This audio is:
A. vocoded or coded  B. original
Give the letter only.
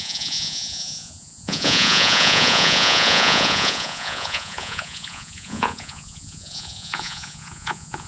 A